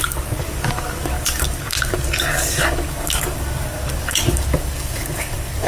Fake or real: fake